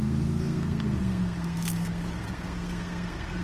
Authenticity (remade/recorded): remade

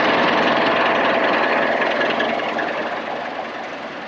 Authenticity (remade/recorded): recorded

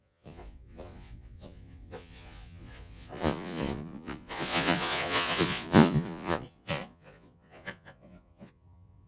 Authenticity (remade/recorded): remade